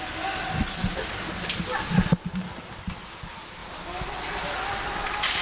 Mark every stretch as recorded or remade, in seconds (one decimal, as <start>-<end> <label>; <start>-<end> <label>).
0.0-5.4 recorded